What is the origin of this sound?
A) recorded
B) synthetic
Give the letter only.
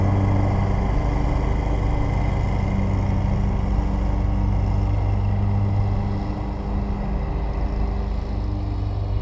A